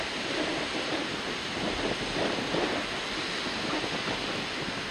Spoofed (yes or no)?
no